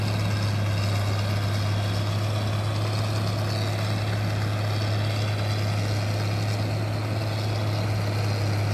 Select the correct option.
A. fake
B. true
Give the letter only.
B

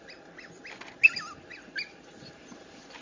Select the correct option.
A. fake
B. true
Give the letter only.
B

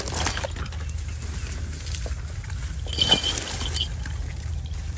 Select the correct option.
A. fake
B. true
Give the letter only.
B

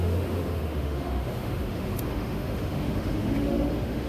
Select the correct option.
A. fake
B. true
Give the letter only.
A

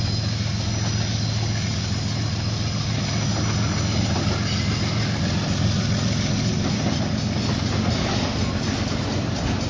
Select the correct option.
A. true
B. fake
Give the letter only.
A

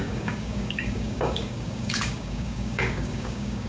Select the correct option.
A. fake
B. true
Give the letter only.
A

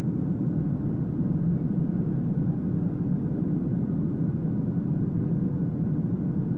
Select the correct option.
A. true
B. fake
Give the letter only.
A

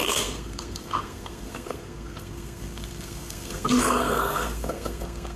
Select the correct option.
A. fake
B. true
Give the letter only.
A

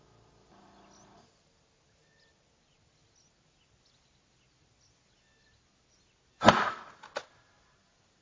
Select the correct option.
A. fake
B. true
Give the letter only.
B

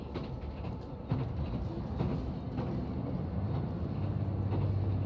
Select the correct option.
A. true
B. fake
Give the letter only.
A